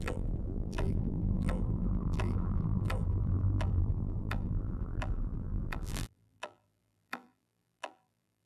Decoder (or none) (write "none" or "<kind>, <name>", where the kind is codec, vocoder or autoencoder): vocoder, BigVGAN v2